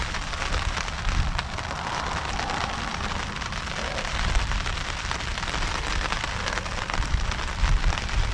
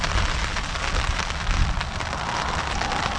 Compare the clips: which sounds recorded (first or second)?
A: second